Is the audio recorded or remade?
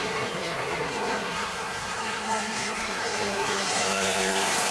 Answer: remade